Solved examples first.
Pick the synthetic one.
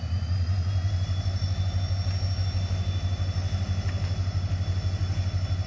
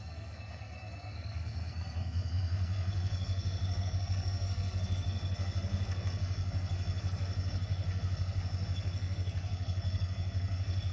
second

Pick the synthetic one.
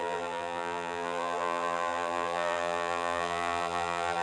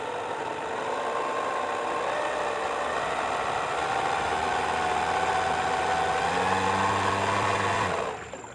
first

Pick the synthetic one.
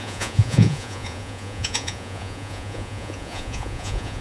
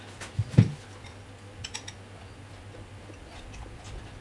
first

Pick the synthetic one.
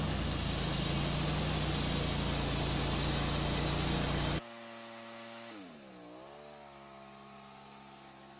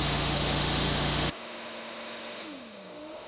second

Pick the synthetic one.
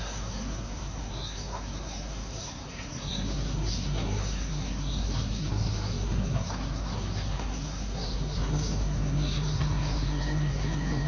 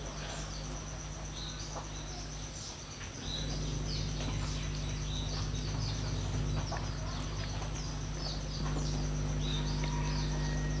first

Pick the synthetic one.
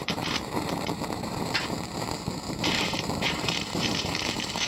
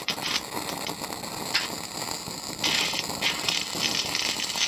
first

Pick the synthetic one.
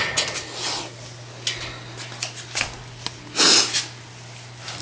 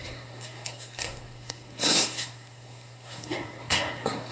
second